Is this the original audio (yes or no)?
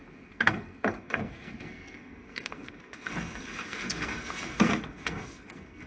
no